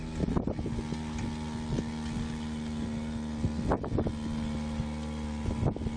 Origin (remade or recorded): recorded